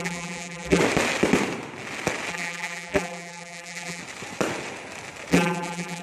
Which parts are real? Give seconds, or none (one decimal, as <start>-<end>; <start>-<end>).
0.8-2.3; 4.0-5.3